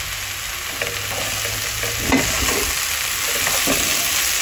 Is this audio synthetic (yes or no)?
no